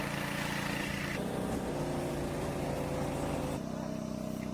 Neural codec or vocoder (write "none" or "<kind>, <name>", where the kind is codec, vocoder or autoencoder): none